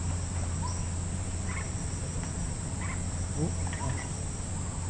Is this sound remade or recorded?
recorded